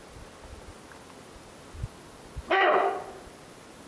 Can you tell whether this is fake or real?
real